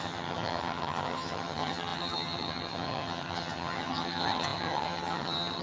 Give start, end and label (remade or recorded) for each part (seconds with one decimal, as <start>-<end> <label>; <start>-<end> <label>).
0.0-5.6 remade